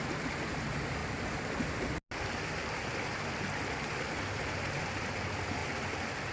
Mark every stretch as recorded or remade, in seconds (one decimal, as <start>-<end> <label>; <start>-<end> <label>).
0.0-6.3 recorded